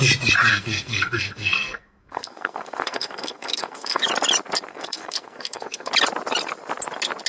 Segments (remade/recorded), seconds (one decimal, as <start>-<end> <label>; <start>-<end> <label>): 0.0-0.5 recorded; 0.5-4.0 remade; 4.0-4.7 recorded; 4.7-5.9 remade; 5.9-7.3 recorded